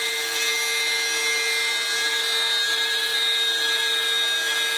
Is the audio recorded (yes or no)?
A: yes